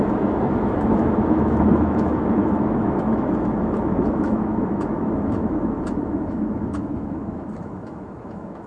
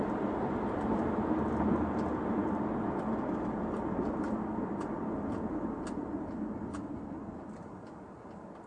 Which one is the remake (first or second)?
first